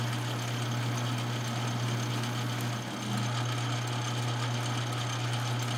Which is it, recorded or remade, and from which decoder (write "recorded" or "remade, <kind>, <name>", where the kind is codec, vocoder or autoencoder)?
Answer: recorded